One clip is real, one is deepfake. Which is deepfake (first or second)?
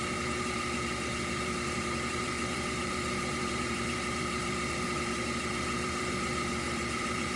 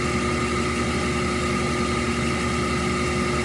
first